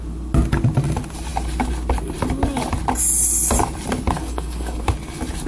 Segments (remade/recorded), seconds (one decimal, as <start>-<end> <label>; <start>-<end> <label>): 0.0-4.2 recorded; 4.2-4.8 remade; 4.8-5.5 recorded